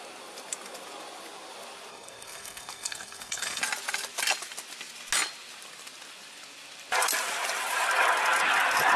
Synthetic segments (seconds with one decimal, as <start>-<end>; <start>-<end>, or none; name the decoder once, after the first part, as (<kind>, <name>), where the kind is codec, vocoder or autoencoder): 1.9-3.6 (codec, SNAC)

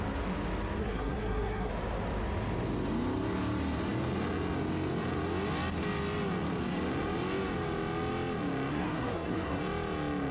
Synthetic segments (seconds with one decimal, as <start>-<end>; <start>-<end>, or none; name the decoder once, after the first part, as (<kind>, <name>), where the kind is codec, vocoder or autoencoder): 0.8-1.7 (codec, SNAC); 8.7-9.6

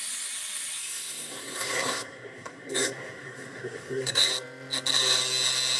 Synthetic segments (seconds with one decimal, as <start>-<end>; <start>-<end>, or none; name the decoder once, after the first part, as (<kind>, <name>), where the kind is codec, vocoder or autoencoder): 0.8-4.3 (codec, SNAC)